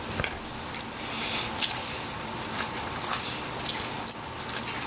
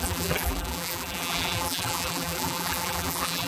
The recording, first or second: first